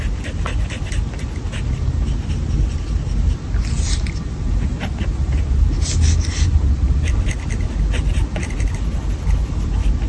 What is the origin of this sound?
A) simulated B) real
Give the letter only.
B